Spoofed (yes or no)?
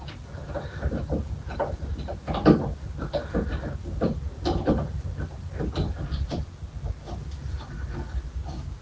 no